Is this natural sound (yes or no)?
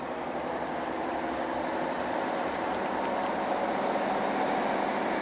yes